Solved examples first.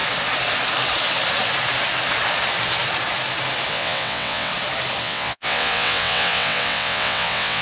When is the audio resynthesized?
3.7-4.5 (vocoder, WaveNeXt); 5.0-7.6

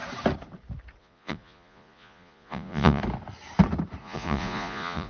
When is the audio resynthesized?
1.0-3.0 (vocoder, Vocos); 4.0-5.1